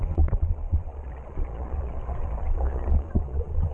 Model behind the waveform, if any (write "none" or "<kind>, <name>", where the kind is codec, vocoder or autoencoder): vocoder, Vocos